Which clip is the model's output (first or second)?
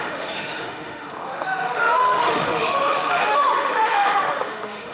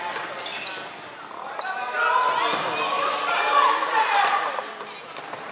first